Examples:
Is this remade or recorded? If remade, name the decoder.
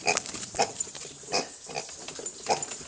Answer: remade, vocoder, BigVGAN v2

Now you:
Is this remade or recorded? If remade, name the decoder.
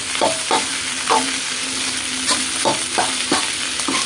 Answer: remade, vocoder, BigVGAN v2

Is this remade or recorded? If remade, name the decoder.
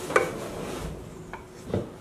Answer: recorded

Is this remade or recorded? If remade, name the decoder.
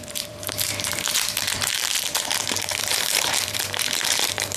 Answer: remade, vocoder, BigVGAN v2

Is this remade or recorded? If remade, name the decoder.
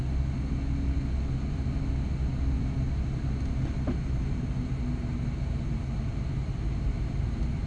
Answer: recorded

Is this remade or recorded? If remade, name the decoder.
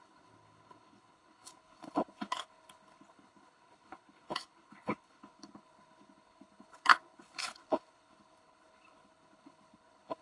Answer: remade, codec, HILCodec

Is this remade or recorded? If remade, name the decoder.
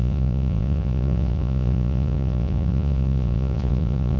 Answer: remade, vocoder, Vocos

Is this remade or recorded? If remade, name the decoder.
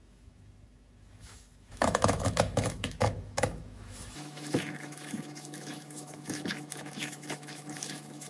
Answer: remade, autoencoder, DAC-VAE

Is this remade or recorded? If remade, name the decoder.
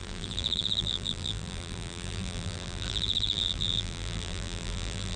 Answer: remade, vocoder, BigVGAN v2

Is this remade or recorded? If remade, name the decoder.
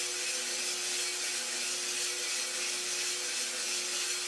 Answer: recorded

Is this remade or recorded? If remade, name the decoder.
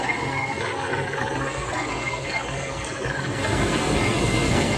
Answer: remade, codec, SNAC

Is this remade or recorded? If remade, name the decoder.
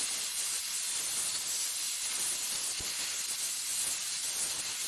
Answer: recorded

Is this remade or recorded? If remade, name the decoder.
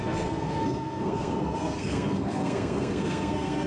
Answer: remade, codec, SNAC